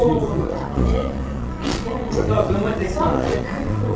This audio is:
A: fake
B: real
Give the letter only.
A